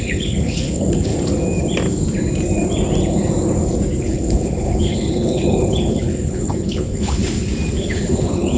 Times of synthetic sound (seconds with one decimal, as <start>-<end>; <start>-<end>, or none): 0.0-1.1; 4.0-7.2; 7.8-8.6